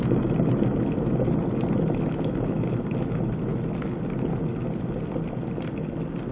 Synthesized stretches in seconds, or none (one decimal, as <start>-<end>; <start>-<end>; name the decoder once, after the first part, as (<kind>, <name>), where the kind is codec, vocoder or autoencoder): none